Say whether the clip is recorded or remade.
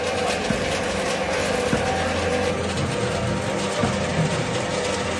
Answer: recorded